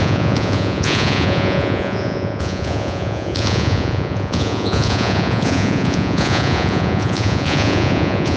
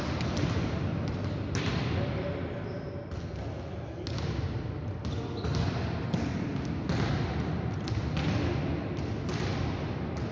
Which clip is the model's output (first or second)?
first